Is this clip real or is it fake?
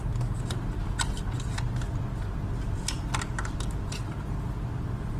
real